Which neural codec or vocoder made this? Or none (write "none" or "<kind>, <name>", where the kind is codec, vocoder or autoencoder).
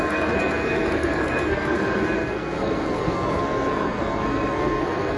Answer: codec, SNAC